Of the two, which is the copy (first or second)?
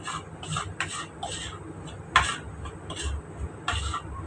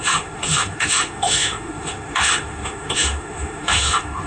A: second